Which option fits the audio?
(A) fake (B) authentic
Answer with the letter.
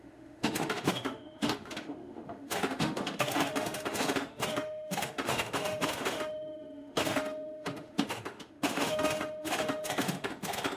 A